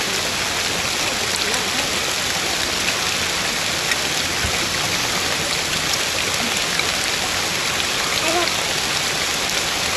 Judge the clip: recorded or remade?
recorded